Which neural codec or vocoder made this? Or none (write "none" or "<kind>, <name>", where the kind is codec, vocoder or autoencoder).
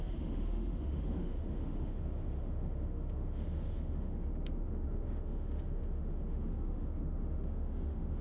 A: autoencoder, DAC-VAE